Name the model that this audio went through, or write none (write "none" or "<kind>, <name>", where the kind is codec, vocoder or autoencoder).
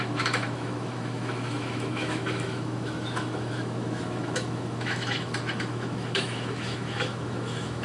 autoencoder, DAC-VAE